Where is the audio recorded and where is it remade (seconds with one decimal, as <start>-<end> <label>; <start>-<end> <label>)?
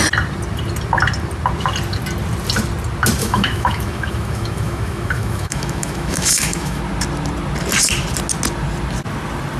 0.0-3.2 recorded; 3.2-6.8 remade; 6.8-9.6 recorded